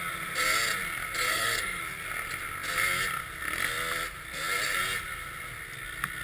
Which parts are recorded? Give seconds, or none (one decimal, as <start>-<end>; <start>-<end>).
0.0-1.3; 1.8-6.2